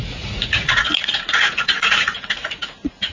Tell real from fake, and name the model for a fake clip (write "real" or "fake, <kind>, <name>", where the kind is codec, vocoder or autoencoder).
fake, vocoder, Vocos